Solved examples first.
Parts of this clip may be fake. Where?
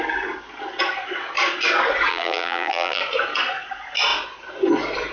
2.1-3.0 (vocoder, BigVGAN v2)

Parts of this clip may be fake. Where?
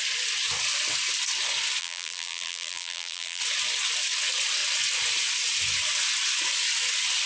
1.8-3.4 (vocoder, BigVGAN v2)